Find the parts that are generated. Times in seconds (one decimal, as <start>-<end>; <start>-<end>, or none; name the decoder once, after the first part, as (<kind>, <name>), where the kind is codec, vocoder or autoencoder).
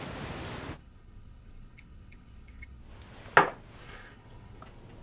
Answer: 0.8-2.8 (codec, HILCodec); 3.8-4.6